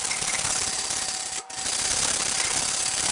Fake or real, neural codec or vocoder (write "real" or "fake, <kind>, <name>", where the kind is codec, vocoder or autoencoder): fake, vocoder, BigVGAN v2